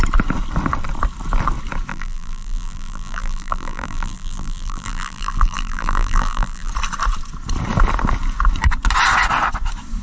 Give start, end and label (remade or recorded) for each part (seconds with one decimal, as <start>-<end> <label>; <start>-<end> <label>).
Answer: 0.0-1.9 recorded; 1.9-6.7 remade; 6.7-10.0 recorded